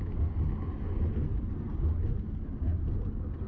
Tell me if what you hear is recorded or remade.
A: recorded